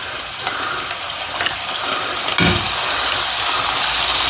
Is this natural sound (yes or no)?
yes